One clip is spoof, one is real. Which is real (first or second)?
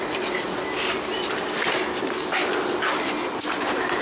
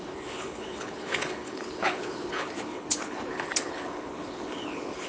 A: first